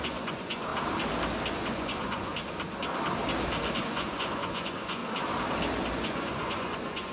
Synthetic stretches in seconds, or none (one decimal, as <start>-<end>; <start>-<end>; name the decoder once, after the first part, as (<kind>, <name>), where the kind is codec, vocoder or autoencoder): 0.0-0.7 (vocoder, Vocos); 1.5-2.3; 3.8-5.0; 5.9-7.1